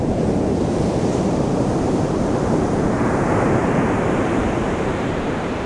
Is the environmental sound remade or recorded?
remade